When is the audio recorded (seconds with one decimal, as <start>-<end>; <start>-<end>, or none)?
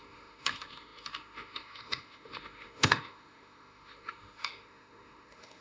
none